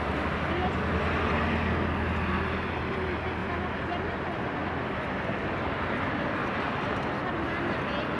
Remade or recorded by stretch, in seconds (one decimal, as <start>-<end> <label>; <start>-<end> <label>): 0.0-8.2 recorded